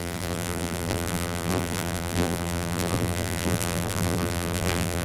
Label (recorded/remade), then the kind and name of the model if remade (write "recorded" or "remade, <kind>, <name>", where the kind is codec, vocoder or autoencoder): remade, vocoder, BigVGAN v2